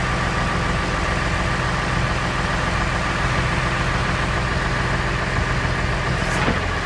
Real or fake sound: real